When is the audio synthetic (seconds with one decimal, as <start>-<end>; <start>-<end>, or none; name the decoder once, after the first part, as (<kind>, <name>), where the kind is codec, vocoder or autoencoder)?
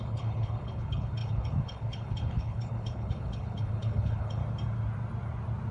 0.0-4.4 (codec, HILCodec)